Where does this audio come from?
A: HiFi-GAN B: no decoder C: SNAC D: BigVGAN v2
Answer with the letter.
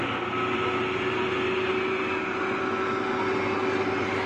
B